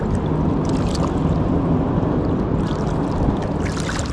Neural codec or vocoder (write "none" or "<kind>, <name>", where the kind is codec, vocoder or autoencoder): none